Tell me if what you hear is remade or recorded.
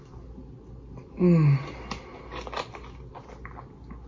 recorded